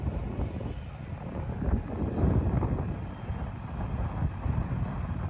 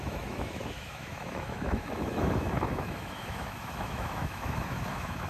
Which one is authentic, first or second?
first